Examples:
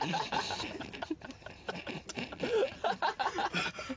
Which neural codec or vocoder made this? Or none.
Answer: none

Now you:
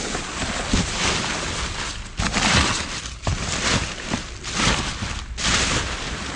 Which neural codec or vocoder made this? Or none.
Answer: none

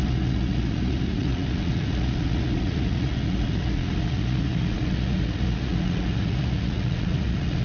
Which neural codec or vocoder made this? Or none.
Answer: vocoder, Vocos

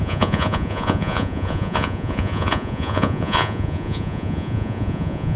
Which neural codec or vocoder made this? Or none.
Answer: vocoder, Vocos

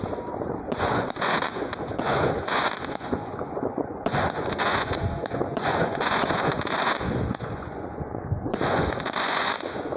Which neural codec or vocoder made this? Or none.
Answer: vocoder, Vocos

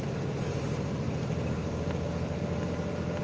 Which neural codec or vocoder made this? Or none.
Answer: none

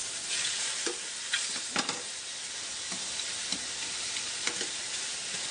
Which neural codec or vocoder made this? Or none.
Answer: none